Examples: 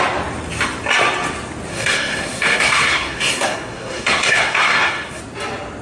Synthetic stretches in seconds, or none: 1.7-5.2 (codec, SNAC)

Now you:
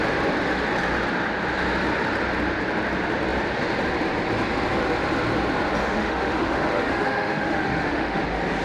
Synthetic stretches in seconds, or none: 5.8-8.2 (autoencoder, DAC-VAE)

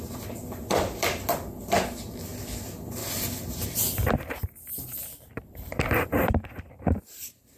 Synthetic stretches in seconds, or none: 3.0-6.6 (vocoder, BigVGAN v2)

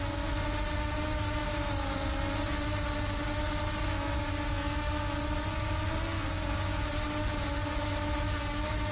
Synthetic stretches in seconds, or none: none

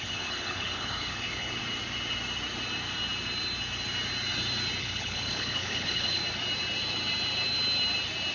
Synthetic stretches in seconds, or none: 0.0-1.6 (codec, HILCodec); 4.8-6.2

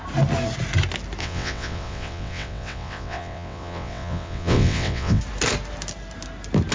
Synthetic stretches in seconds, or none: 1.2-5.2 (vocoder, WaveNeXt)

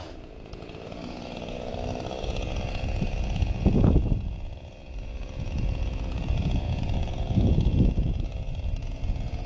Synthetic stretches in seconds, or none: 0.0-1.7 (vocoder, Vocos); 2.2-9.5